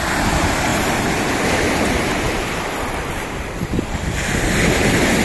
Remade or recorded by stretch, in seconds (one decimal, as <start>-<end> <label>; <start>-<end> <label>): 0.0-5.2 recorded

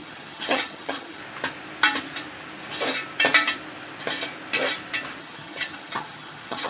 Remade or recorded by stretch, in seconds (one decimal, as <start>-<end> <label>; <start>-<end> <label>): 0.0-1.2 remade; 1.2-5.2 recorded; 5.2-6.7 remade